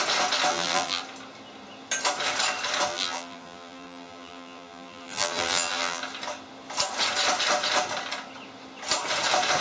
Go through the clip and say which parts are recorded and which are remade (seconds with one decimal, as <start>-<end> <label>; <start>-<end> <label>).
0.0-0.5 recorded; 0.5-1.0 remade; 1.0-2.9 recorded; 2.9-6.0 remade; 6.0-9.6 recorded